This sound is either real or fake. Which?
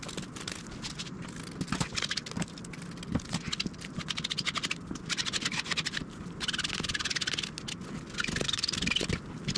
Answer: real